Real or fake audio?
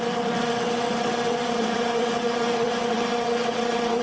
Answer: fake